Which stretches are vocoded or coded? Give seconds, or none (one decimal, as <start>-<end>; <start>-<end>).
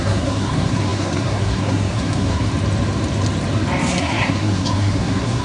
0.0-2.5; 4.0-5.4